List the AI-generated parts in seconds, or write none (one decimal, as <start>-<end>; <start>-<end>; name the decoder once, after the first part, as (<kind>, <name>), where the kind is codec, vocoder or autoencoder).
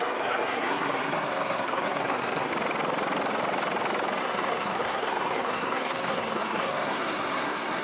0.0-2.5 (codec, SNAC); 4.2-7.8